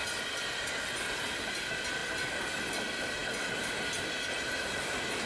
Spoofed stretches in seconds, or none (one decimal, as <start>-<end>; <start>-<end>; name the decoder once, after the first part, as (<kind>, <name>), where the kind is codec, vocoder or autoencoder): none